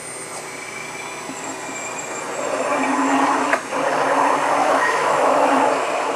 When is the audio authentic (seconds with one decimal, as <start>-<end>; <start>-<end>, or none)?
0.0-4.6; 5.6-6.2